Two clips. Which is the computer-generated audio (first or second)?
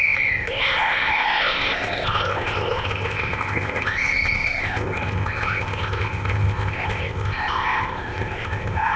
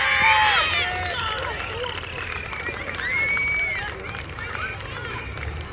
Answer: first